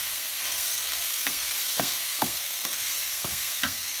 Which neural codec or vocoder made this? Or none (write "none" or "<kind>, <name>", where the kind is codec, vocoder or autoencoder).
codec, SNAC